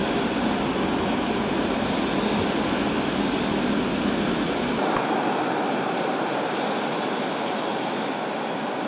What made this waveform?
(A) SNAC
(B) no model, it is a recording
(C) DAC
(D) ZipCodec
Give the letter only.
B